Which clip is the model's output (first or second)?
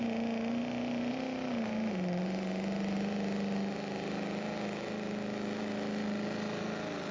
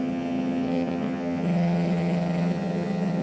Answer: second